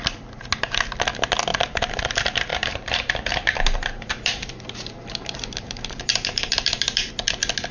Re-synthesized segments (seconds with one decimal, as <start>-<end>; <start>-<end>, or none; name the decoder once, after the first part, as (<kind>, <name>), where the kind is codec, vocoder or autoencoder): 1.5-2.1 (vocoder, BigVGAN v2); 2.5-7.1